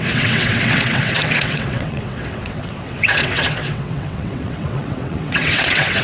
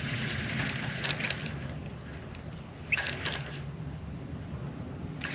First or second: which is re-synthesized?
first